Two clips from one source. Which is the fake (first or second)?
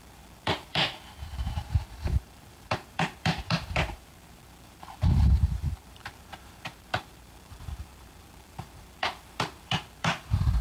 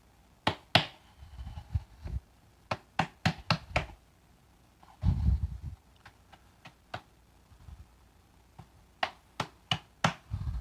first